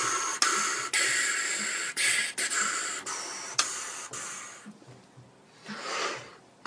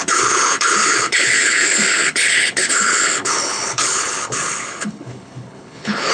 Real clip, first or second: first